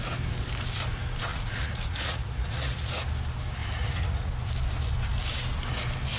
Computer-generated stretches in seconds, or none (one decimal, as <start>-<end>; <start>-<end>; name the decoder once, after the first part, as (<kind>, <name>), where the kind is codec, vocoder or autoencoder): 1.3-2.9 (vocoder, Vocos); 3.6-4.3